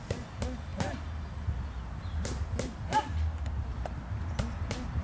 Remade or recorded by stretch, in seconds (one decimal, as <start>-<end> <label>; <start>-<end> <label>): 0.0-0.7 remade; 0.7-3.7 recorded; 3.7-5.0 remade